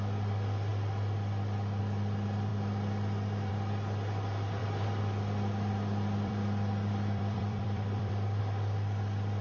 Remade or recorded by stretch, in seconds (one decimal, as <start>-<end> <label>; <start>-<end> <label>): 0.0-0.7 recorded; 0.7-1.8 remade; 1.8-4.6 recorded; 4.6-8.4 remade; 8.4-9.4 recorded